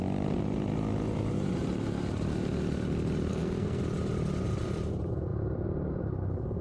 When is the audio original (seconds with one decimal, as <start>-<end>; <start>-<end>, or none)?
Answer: 0.0-3.3; 3.8-6.6